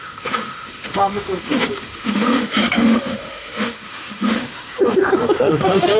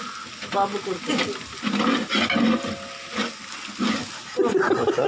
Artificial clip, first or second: first